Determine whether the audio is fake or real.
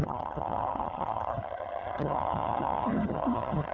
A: fake